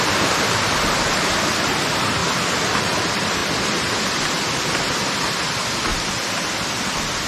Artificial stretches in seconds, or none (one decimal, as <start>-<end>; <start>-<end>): 0.0-2.2; 3.0-3.4; 4.6-5.9; 6.8-7.3